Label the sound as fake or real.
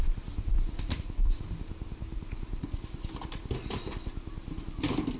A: real